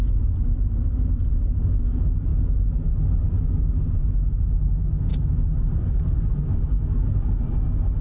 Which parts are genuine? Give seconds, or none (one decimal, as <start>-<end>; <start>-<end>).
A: 0.0-8.0